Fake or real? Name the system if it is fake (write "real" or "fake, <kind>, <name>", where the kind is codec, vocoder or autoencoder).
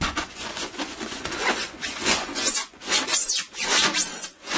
fake, vocoder, Vocos